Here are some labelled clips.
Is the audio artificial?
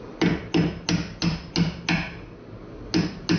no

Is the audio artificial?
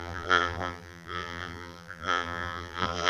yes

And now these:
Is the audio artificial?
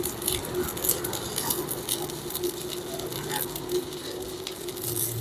no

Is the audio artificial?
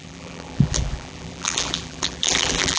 yes